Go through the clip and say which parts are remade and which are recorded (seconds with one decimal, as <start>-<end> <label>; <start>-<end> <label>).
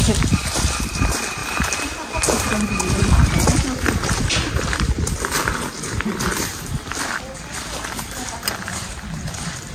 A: 0.0-9.7 remade